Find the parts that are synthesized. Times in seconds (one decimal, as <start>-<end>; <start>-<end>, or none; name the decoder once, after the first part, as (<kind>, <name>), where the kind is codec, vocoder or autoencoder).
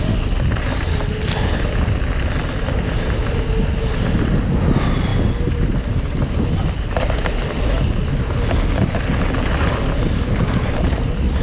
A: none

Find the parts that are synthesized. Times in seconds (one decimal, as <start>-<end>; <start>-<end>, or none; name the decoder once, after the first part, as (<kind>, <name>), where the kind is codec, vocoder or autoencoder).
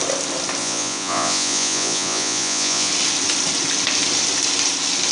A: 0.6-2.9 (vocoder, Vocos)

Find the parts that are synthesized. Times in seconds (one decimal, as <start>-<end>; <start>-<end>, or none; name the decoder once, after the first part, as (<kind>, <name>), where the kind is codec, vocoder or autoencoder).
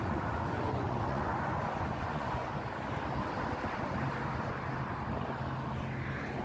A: 0.0-2.5 (vocoder, Vocos)